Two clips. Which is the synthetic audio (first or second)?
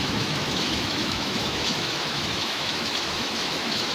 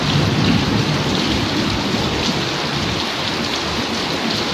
first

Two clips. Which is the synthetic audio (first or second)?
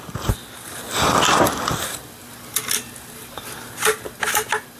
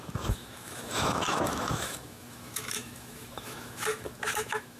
second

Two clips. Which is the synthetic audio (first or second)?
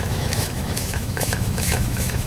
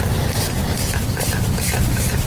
first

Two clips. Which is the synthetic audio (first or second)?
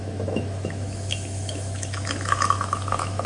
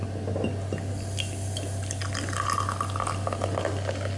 first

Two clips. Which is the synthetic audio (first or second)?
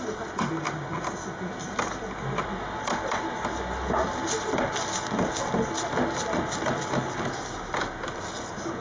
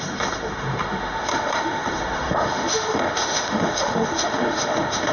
second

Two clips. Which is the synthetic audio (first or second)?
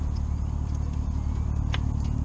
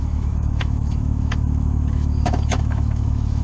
second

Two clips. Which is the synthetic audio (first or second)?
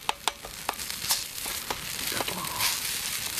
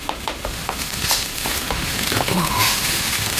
second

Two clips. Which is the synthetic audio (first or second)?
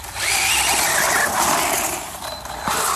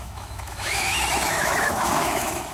second